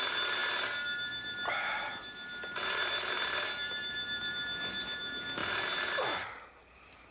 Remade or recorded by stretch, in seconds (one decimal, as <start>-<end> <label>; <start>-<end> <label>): 0.0-7.1 recorded